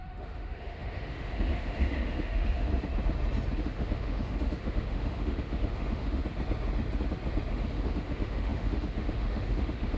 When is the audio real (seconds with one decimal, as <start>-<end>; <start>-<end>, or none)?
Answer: 2.7-3.6; 6.2-7.5